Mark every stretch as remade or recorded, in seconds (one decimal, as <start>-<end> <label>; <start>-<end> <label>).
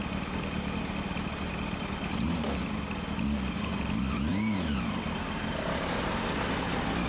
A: 0.0-7.1 recorded